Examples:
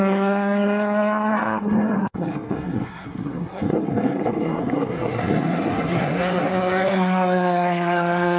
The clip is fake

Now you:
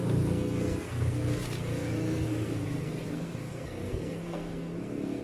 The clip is fake